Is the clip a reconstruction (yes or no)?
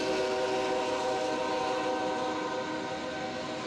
no